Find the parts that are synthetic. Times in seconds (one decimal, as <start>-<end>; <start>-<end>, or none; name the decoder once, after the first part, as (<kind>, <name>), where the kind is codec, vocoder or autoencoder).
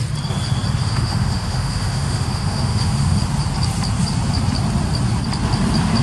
0.8-3.2 (autoencoder, DAC-VAE)